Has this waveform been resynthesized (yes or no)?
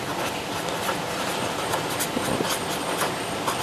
yes